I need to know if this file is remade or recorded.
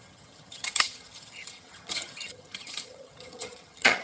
remade